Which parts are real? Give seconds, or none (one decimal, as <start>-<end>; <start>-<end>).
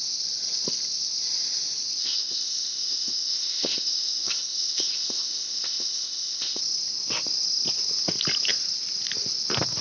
0.0-2.0; 6.6-9.8